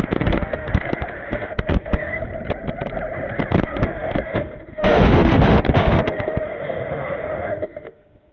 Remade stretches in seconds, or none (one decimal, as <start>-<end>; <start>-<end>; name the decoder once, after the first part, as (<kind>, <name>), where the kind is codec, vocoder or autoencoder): 0.0-2.2 (autoencoder, DAC-VAE); 3.5-8.3